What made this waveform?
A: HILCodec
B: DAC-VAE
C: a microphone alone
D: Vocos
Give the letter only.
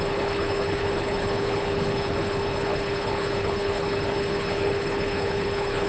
A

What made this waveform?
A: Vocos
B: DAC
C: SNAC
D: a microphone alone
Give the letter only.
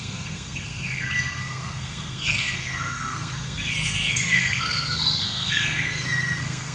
C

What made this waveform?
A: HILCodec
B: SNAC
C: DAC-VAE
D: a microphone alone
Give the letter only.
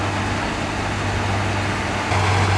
D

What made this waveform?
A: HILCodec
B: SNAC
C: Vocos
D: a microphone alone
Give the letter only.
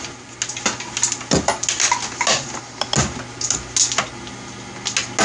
D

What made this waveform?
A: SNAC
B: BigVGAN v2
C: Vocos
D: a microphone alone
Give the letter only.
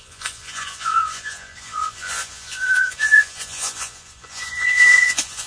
C